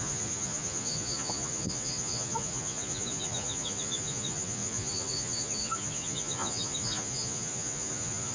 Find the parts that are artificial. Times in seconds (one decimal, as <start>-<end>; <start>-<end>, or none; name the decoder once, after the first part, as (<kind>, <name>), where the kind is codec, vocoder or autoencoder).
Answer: 0.0-8.3 (vocoder, Vocos)

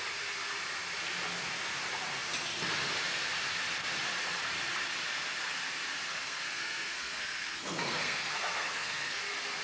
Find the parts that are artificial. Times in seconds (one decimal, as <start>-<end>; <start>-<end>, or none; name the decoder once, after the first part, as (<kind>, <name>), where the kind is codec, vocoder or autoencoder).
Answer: 6.1-9.2 (codec, SNAC)